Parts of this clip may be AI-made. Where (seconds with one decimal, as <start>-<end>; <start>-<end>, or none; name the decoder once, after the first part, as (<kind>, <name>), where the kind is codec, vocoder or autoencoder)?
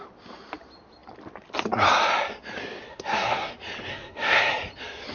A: 2.9-3.5 (codec, SNAC); 3.9-4.5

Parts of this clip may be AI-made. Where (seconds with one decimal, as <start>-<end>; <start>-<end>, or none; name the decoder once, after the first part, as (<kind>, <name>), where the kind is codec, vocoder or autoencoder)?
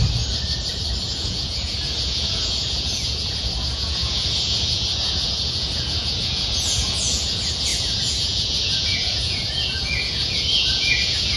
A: 1.0-11.4 (vocoder, Vocos)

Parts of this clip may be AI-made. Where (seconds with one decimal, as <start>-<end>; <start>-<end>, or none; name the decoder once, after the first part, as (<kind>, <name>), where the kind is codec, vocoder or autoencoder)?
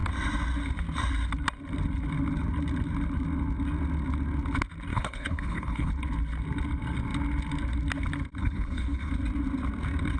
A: 4.9-5.9 (codec, HILCodec); 8.4-9.1